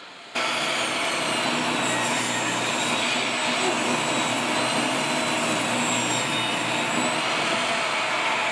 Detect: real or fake real